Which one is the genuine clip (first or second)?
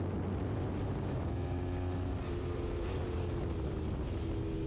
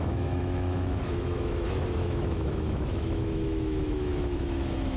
first